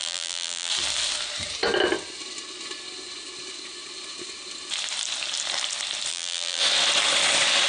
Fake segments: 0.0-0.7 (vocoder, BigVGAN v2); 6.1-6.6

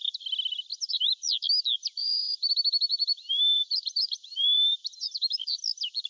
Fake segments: 1.8-2.5 (vocoder, BigVGAN v2); 2.9-5.6

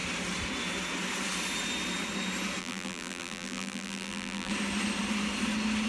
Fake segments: 2.6-4.5 (vocoder, BigVGAN v2)

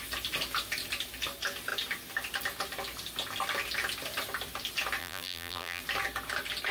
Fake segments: 5.0-5.8 (vocoder, BigVGAN v2)